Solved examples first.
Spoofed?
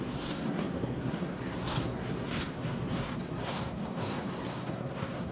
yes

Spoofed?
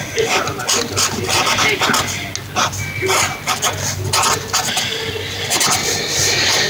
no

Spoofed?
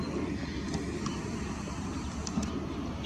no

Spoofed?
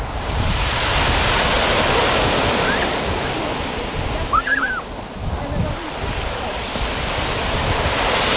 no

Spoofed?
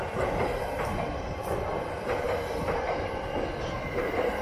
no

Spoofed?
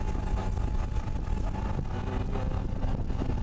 no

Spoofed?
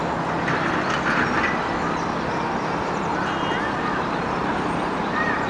no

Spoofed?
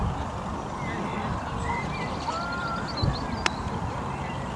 no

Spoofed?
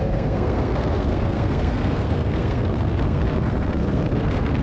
yes